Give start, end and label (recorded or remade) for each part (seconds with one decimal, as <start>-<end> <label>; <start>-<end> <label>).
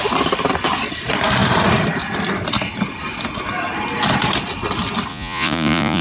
0.0-5.1 recorded; 5.1-6.0 remade